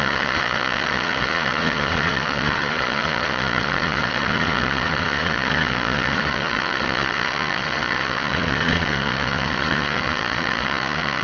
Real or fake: fake